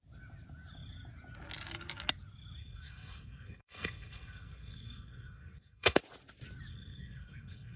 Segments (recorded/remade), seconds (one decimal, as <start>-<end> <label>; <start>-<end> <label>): 0.0-2.6 recorded; 2.6-6.0 remade; 6.0-6.7 recorded; 6.7-7.8 remade